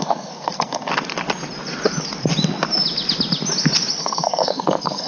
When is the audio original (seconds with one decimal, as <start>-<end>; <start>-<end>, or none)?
0.9-4.0